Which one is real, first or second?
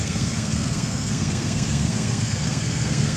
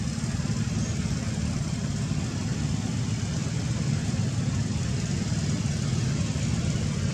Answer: second